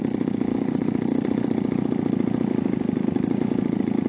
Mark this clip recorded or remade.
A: remade